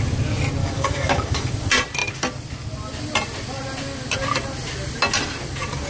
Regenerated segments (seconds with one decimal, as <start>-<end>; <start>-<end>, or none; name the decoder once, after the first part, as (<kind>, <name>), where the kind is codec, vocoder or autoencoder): 0.6-1.5 (codec, DAC)

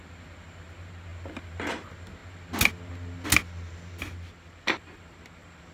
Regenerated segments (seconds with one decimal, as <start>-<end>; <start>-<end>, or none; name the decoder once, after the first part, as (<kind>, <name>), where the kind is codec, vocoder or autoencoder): none

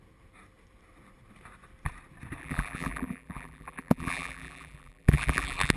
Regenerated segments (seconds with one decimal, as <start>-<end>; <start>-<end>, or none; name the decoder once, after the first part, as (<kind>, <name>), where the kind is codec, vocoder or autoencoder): 2.4-5.8 (vocoder, BigVGAN v2)

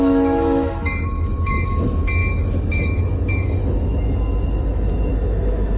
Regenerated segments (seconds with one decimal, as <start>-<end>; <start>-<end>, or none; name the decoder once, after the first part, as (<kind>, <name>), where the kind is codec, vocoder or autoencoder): 0.0-5.8 (autoencoder, DAC-VAE)